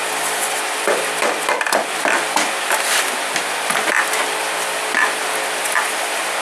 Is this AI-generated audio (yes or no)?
no